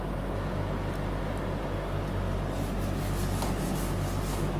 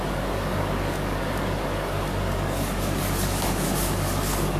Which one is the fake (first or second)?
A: second